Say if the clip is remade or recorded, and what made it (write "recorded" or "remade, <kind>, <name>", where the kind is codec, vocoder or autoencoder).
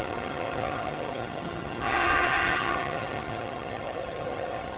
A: remade, vocoder, HiFi-GAN